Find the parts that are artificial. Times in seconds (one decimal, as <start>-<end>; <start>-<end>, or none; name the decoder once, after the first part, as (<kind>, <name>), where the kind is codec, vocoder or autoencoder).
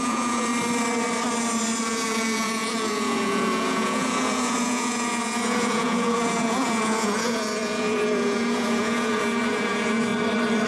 0.0-0.5 (vocoder, Vocos); 1.8-10.1